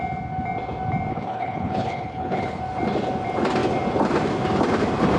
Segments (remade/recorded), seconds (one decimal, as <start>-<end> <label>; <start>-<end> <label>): 0.0-1.1 recorded; 1.1-2.6 remade; 2.6-5.2 recorded